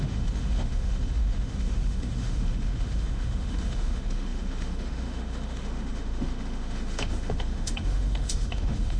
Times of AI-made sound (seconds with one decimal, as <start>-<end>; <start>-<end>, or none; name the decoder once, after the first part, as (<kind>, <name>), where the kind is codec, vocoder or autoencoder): 0.0-9.0 (autoencoder, DAC-VAE)